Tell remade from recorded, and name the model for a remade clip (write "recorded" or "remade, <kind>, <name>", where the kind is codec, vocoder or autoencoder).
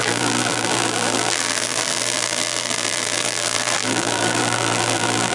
remade, vocoder, BigVGAN v2